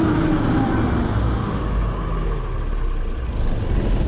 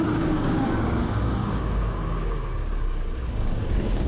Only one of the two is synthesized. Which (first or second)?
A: second